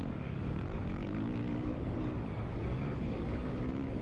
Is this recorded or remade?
remade